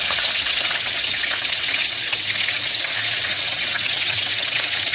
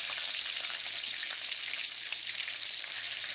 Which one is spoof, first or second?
first